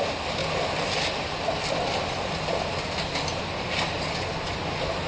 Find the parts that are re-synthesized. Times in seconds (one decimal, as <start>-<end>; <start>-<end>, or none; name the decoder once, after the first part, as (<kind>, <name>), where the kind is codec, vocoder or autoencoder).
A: none